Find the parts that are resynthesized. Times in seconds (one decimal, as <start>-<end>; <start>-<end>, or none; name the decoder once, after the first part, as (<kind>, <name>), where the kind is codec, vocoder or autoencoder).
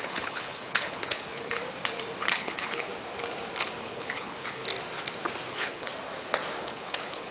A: 0.0-1.6 (codec, HILCodec); 2.2-2.9; 3.8-4.6; 5.5-5.9; 6.6-7.3